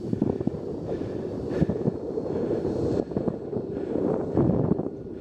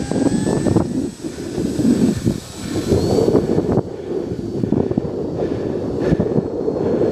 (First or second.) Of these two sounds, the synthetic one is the first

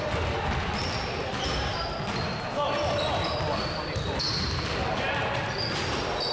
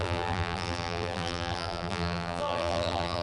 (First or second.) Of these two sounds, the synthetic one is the second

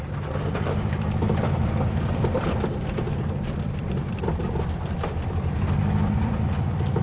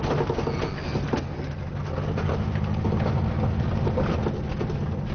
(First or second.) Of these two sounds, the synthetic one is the first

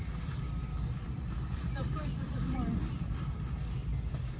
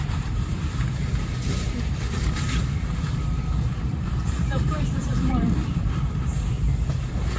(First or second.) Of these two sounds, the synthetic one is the second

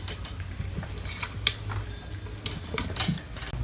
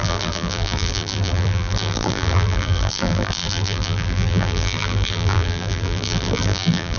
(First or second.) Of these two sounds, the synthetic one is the second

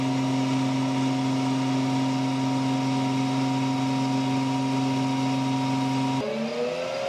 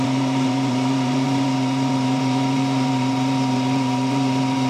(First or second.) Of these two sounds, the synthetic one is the second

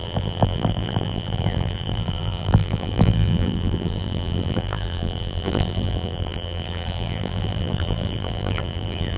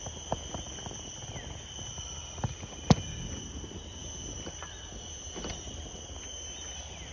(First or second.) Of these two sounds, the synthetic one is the first